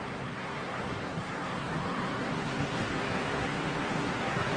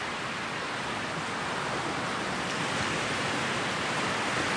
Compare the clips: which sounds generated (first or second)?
first